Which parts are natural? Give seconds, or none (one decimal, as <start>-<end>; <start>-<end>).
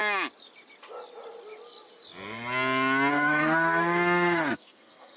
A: 0.0-3.1